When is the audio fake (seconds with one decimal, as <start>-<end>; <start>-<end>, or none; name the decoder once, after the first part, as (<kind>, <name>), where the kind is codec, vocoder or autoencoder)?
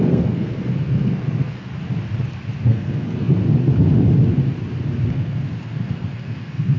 0.0-1.7 (codec, SNAC); 2.6-3.4; 5.1-6.8